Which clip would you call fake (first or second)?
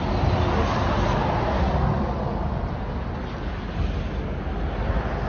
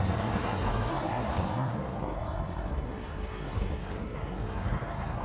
second